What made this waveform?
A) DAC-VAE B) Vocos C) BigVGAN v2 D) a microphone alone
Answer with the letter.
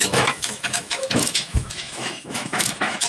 A